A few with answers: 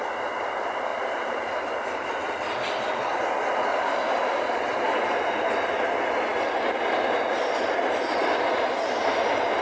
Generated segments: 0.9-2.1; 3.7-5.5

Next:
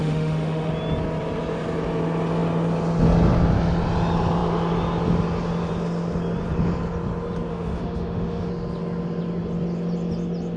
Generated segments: 0.0-0.7; 7.5-8.5

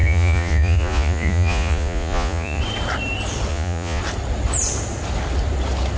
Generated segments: 0.0-2.6; 3.5-4.0

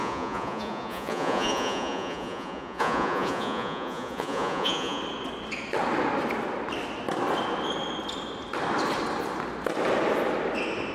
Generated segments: 0.0-5.0

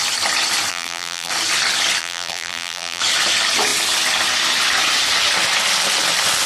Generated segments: 0.7-1.3; 2.0-3.0

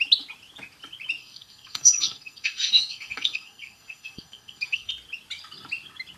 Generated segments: 1.2-4.9